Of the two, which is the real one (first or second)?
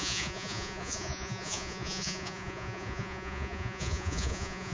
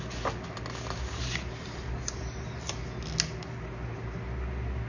second